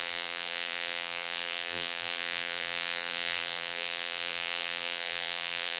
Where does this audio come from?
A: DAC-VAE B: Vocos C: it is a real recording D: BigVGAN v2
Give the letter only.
D